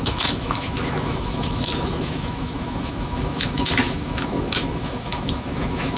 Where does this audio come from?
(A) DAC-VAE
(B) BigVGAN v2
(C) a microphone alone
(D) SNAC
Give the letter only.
A